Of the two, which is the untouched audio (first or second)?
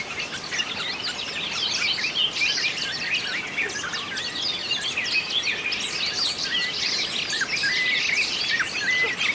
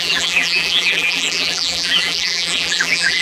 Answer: first